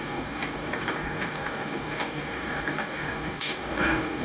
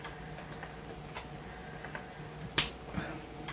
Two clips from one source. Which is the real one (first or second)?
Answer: second